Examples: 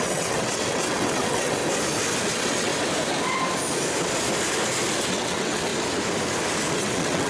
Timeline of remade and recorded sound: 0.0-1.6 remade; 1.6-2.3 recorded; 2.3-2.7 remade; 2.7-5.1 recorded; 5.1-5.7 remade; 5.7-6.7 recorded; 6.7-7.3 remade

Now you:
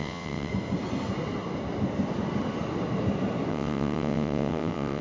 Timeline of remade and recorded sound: 0.0-0.5 remade; 0.5-3.5 recorded; 3.5-5.0 remade

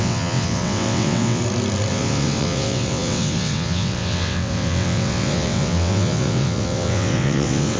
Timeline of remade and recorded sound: 0.0-1.4 remade; 1.4-1.9 recorded; 1.9-7.8 remade